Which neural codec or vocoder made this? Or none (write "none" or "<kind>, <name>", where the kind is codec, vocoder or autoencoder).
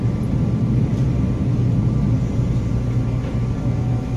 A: none